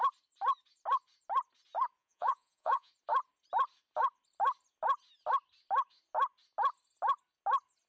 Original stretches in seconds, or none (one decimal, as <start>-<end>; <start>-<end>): 0.0-2.0; 2.9-7.9